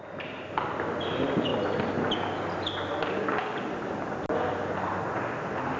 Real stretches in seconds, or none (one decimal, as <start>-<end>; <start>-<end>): 0.0-5.8